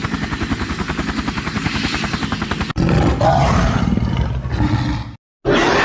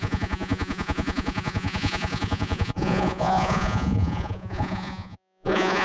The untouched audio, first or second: first